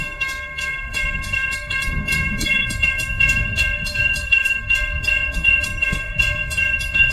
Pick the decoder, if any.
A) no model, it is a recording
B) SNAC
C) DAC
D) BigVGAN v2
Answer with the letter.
B